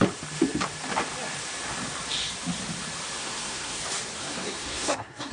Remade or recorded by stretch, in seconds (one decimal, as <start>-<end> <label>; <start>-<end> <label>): 0.0-3.2 recorded; 3.2-3.8 remade; 3.8-4.2 recorded; 4.2-5.3 remade